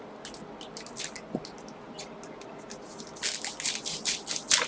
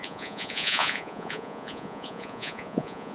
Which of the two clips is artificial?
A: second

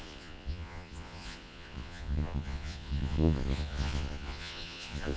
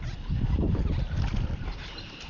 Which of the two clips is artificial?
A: first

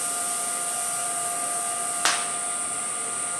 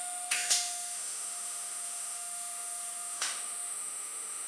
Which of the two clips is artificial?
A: second